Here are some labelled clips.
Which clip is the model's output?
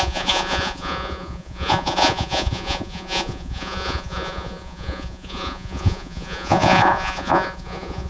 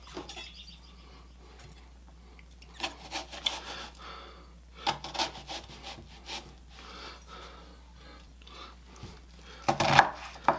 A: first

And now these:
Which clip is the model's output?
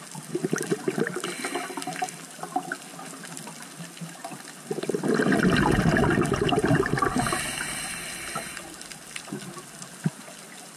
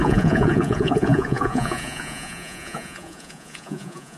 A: second